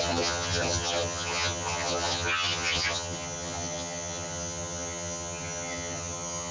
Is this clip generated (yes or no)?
yes